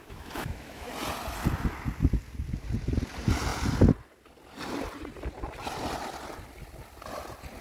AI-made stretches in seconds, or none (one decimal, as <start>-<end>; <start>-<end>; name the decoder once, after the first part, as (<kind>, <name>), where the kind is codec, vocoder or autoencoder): 0.0-0.9 (autoencoder, DAC-VAE)